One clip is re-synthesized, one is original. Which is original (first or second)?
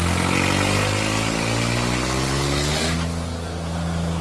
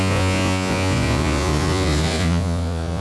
first